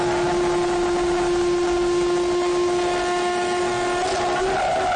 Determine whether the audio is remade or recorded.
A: recorded